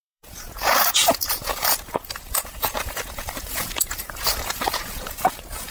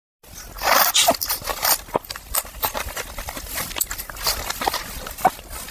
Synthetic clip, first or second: first